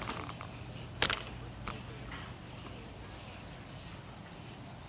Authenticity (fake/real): real